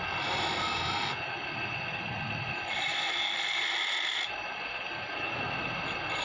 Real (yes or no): yes